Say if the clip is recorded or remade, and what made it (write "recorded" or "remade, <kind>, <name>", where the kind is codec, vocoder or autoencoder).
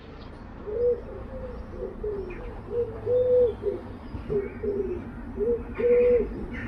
recorded